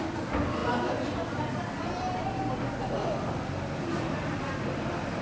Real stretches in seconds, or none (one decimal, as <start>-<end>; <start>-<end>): 0.0-5.2